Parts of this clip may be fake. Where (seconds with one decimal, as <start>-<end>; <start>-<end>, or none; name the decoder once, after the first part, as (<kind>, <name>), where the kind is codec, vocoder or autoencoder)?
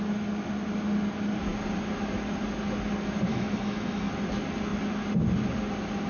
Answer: 3.3-4.1 (autoencoder, DAC-VAE)